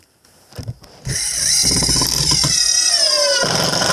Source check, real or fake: fake